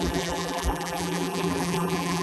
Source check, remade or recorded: remade